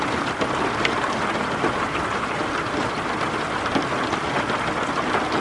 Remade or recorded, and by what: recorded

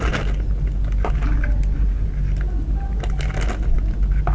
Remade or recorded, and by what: recorded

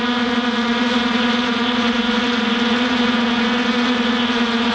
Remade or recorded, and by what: remade, vocoder, Vocos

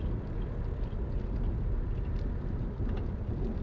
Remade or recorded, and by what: recorded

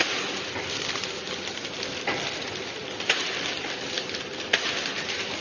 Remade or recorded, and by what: recorded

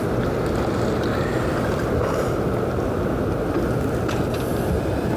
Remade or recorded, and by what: recorded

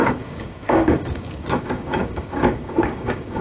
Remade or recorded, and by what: remade, codec, DAC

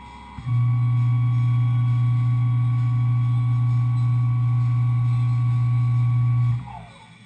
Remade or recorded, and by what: recorded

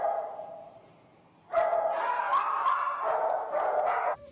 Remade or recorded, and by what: recorded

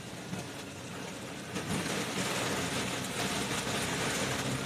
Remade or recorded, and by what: recorded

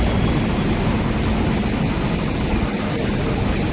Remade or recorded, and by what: recorded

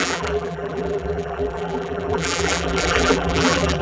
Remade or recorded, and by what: remade, vocoder, BigVGAN v2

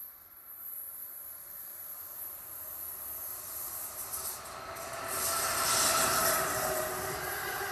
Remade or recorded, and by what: recorded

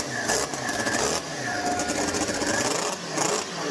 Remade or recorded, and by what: recorded